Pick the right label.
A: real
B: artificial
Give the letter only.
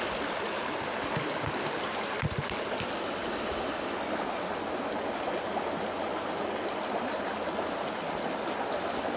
A